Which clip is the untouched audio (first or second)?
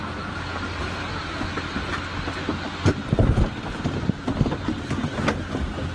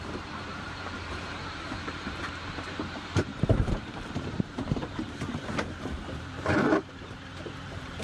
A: first